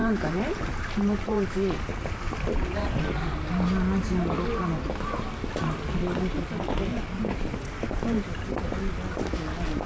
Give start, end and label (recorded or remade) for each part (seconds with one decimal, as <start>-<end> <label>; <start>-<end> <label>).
0.0-3.0 remade; 3.0-6.9 recorded; 6.9-8.5 remade; 8.5-9.9 recorded